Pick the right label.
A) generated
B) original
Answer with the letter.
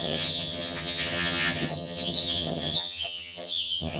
A